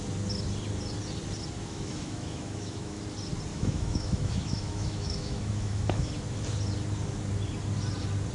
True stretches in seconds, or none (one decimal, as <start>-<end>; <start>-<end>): 0.0-1.6; 3.0-3.5; 6.1-8.3